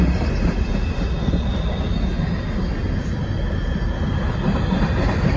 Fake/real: real